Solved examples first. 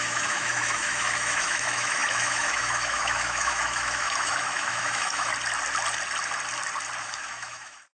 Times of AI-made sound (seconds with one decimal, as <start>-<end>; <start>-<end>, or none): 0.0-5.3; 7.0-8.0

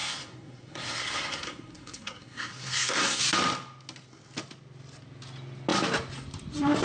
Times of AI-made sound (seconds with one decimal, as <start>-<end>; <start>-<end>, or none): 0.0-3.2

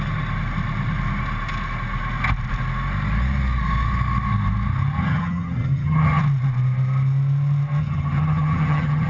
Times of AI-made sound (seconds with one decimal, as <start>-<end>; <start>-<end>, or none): 5.0-6.2; 7.8-9.1